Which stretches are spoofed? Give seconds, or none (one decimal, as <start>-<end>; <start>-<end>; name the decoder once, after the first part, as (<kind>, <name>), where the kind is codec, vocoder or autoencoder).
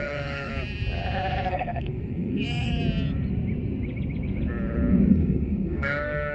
0.0-0.5 (codec, SNAC); 1.5-2.8; 5.1-6.3